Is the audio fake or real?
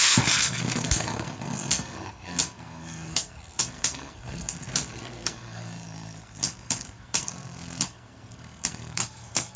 fake